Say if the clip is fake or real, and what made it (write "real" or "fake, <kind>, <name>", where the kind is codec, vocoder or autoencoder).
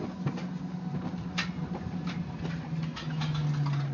real